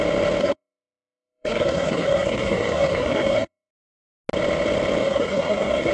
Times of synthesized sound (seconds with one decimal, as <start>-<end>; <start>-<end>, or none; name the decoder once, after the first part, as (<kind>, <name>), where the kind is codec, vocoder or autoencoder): 0.4-3.7 (codec, SNAC); 5.0-5.9